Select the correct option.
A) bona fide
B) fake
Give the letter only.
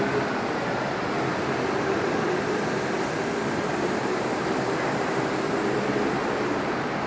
A